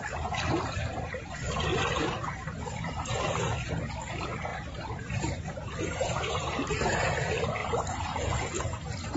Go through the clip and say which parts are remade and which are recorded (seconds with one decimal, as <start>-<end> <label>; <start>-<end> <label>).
0.0-4.5 recorded; 4.5-7.1 remade; 7.1-9.2 recorded